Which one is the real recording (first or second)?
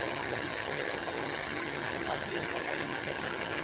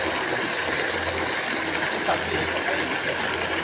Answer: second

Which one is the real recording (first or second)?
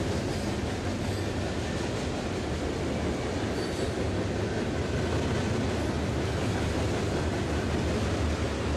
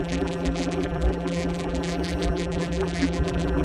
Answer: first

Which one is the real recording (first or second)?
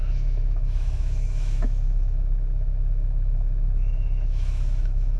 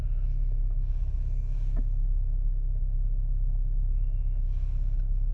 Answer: second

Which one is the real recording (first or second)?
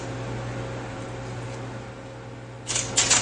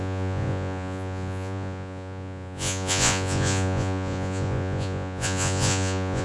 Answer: first